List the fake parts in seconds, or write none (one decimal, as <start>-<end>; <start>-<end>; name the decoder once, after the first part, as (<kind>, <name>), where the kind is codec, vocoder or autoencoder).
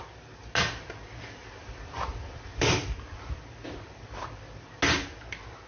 1.4-4.8 (vocoder, BigVGAN v2)